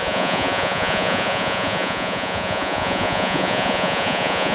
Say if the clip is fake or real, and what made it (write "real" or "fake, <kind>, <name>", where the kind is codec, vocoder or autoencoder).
fake, vocoder, Vocos